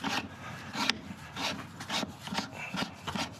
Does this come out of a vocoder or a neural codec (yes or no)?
no